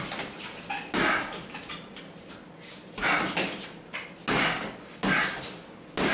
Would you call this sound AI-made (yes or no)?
no